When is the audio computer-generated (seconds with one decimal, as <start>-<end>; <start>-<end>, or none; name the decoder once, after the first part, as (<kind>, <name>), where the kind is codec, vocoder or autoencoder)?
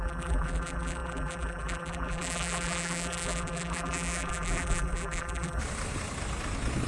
0.0-5.6 (vocoder, BigVGAN v2)